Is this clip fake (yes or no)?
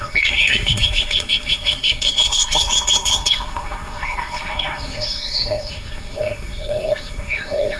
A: yes